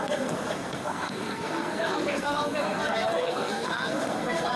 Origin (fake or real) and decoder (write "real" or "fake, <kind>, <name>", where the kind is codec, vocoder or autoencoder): fake, codec, SNAC